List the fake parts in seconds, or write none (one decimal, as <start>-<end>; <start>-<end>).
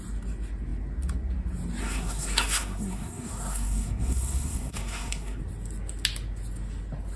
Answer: 1.8-5.4